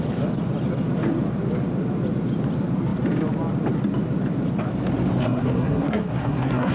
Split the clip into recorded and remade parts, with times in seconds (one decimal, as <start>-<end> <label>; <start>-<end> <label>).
0.0-5.2 recorded; 5.2-6.7 remade